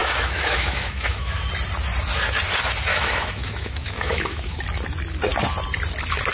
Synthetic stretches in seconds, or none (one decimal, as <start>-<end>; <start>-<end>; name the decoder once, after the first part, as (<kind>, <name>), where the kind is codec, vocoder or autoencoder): 0.0-1.4 (autoencoder, DAC-VAE); 2.9-4.6